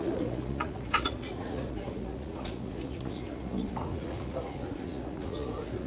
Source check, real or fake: fake